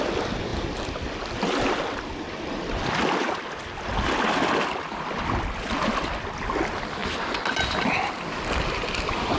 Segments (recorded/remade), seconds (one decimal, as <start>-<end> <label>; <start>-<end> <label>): 0.0-9.4 recorded